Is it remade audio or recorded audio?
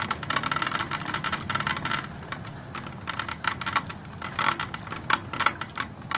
recorded